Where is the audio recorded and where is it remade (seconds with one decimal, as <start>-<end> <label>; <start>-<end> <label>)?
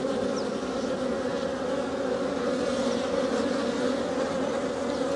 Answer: 0.0-5.2 recorded